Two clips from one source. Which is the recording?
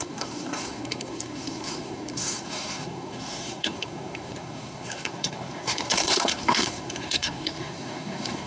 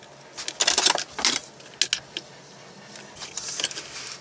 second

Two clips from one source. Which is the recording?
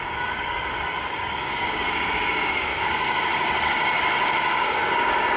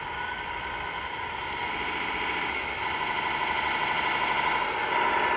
second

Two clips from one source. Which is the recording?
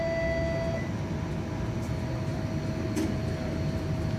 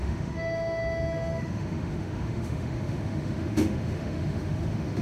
first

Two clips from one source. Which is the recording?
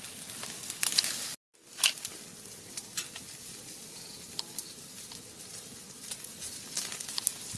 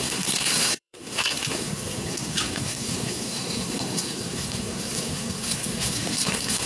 first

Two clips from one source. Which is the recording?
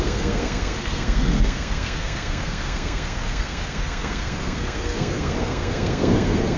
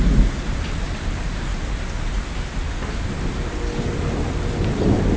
second